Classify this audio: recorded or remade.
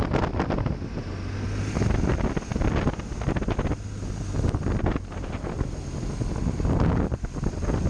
recorded